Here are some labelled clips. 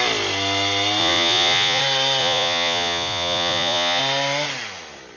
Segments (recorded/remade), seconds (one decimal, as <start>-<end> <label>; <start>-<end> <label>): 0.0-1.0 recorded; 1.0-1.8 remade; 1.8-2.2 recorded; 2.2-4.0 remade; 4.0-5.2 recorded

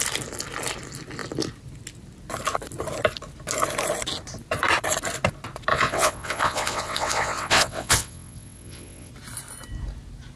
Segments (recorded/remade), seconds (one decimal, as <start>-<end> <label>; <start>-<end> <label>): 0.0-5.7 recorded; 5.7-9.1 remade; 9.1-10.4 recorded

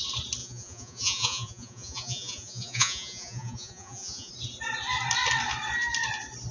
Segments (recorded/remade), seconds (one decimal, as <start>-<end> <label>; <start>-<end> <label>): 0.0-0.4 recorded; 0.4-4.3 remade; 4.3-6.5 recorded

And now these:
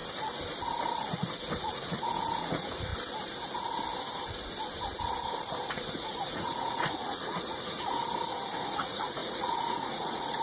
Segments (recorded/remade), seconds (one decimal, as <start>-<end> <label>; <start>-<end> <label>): 0.0-1.6 recorded; 1.6-2.9 remade; 2.9-5.7 recorded; 5.7-8.0 remade; 8.0-8.6 recorded; 8.6-10.4 remade